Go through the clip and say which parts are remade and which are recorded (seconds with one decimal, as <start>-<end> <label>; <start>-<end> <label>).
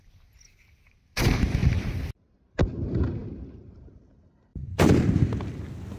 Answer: 0.0-1.6 recorded; 1.6-2.7 remade; 2.7-3.2 recorded; 3.2-3.9 remade; 3.9-4.5 recorded; 4.5-5.2 remade; 5.2-6.0 recorded